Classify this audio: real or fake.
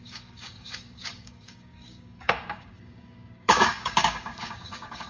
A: fake